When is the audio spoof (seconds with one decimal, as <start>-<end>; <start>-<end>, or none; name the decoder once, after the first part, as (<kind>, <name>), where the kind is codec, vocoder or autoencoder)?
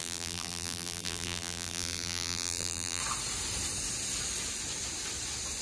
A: 0.0-3.0 (vocoder, BigVGAN v2)